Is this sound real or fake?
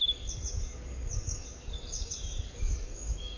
fake